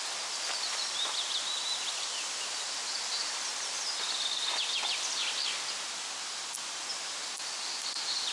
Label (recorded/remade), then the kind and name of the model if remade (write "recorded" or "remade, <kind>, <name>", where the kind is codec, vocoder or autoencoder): recorded